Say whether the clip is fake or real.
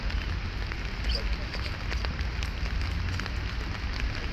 real